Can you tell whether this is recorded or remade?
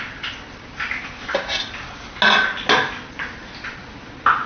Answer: recorded